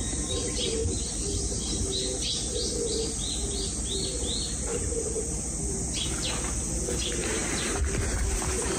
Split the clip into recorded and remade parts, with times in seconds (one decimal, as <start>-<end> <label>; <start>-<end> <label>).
0.0-4.7 recorded; 4.7-6.1 remade; 6.1-8.8 recorded